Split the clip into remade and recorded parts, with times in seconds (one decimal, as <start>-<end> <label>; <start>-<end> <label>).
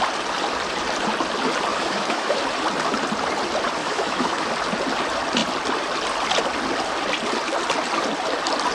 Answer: 0.0-1.7 recorded; 1.7-2.4 remade; 2.4-3.8 recorded; 3.8-4.5 remade; 4.5-8.7 recorded